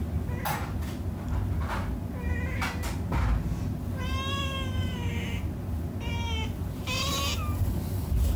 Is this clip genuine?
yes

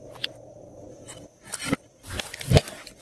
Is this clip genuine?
no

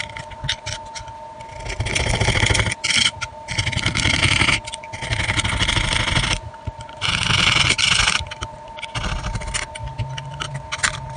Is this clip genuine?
yes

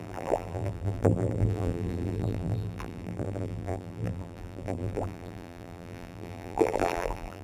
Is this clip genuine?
no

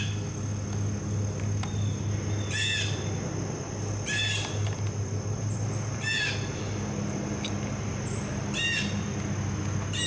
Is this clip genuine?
yes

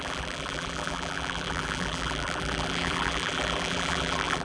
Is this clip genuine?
no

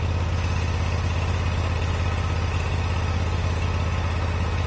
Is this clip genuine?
yes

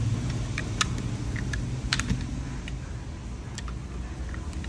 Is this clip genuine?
yes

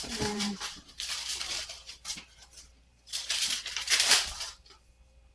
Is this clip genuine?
no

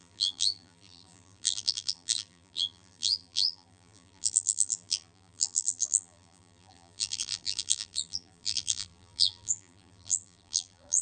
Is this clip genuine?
no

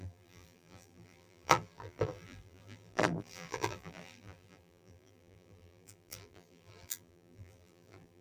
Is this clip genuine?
no